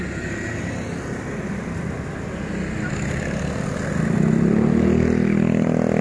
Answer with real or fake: real